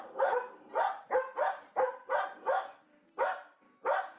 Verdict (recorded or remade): recorded